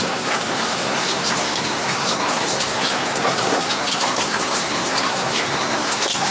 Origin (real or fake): fake